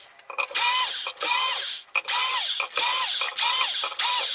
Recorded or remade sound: recorded